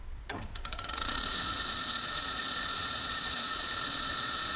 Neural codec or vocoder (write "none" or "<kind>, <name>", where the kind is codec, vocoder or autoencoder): vocoder, Vocos